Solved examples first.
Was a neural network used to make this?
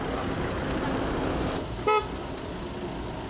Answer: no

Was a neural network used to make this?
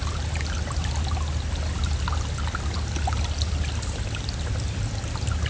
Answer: no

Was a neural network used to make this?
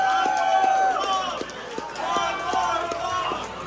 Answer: no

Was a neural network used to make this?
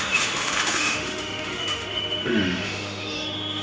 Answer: yes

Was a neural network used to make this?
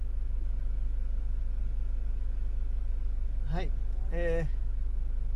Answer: no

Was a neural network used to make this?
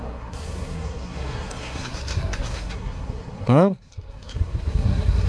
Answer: yes